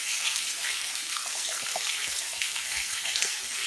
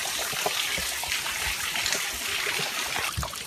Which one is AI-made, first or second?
first